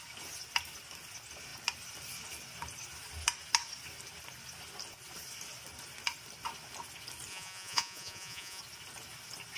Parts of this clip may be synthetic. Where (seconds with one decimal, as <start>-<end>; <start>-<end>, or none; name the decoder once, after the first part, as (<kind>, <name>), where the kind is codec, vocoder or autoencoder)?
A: 7.3-8.6 (vocoder, Vocos)